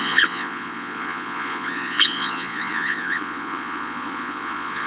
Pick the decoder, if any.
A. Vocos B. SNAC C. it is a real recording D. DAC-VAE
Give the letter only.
A